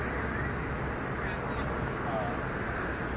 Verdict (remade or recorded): recorded